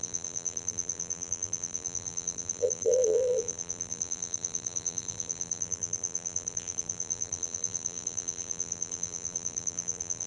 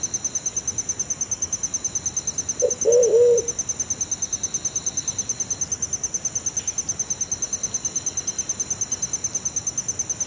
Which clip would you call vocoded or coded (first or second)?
first